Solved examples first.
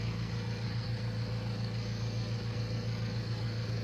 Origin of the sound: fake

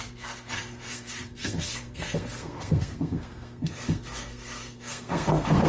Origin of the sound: fake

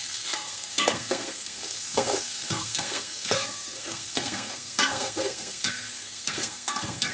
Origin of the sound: fake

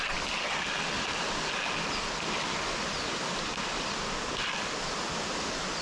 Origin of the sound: real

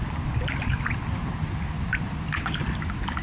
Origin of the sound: real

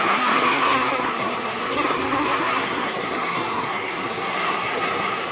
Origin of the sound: fake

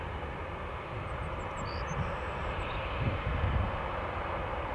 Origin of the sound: real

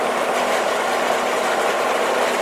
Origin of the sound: real